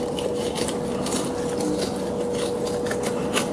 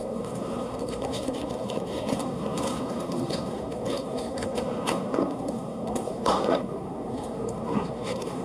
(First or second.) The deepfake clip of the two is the second